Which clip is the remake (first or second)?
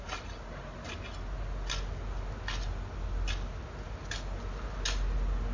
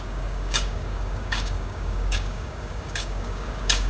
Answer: second